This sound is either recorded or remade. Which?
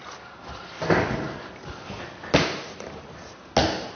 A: recorded